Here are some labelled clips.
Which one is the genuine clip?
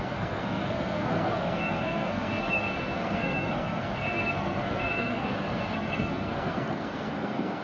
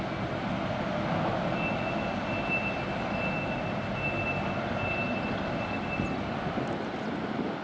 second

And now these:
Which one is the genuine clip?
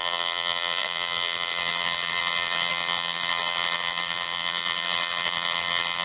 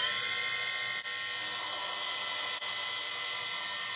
second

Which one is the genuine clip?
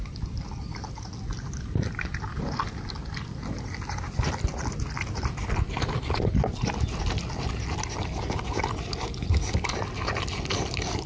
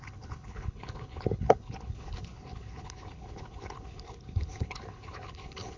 first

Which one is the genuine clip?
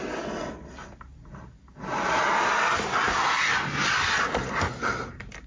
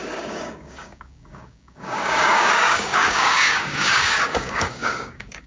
first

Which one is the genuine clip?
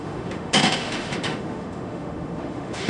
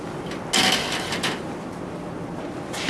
second